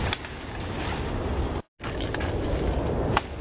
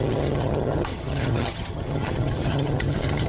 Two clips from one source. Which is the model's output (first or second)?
second